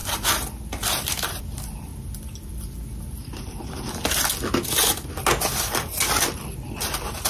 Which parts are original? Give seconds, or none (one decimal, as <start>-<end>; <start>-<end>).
1.9-6.3